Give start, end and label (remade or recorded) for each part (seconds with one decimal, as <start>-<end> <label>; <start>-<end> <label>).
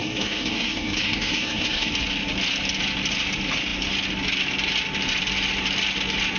0.0-1.9 remade; 1.9-6.4 recorded